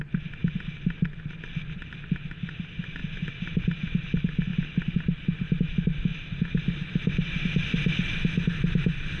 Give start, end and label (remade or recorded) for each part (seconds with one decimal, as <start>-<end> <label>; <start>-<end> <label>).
0.0-9.2 recorded

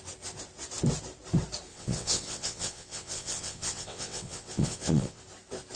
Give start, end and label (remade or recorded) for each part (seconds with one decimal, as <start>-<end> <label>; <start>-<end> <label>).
0.0-1.7 recorded; 1.7-5.2 remade; 5.2-5.8 recorded

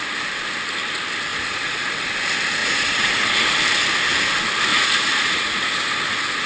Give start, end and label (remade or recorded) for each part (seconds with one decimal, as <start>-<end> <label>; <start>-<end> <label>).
0.0-1.3 recorded; 1.3-1.9 remade; 1.9-2.6 recorded; 2.6-3.6 remade; 3.6-4.7 recorded; 4.7-5.7 remade; 5.7-6.5 recorded